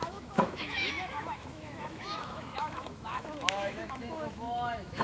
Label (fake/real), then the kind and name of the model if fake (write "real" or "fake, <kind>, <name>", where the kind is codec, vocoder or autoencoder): fake, autoencoder, DAC-VAE